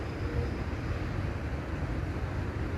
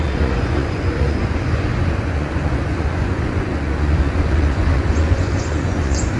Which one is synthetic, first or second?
second